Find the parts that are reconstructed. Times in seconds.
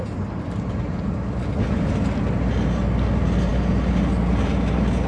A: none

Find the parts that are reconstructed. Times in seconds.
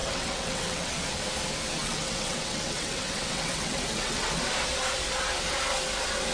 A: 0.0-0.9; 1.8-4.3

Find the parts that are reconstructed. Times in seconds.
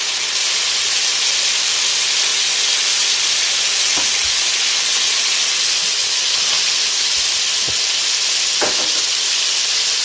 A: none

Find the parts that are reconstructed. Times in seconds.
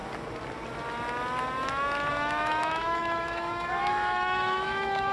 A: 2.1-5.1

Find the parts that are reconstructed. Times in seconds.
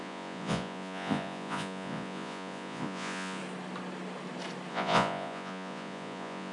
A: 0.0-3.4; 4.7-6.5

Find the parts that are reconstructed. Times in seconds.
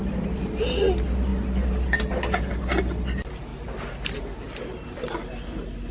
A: none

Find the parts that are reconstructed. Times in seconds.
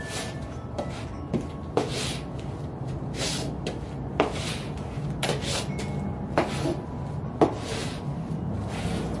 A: none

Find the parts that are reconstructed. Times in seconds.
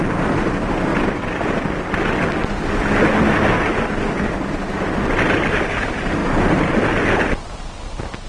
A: none